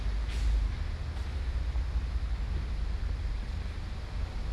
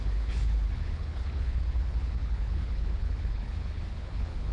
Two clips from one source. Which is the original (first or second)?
first